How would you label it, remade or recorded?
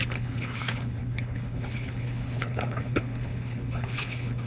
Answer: remade